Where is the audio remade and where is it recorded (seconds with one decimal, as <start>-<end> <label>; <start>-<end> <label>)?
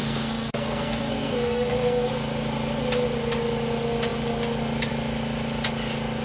0.0-2.1 remade; 2.1-6.2 recorded